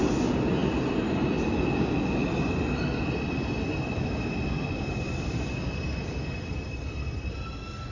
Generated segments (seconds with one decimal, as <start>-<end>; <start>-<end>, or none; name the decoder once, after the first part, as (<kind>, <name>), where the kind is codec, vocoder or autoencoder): none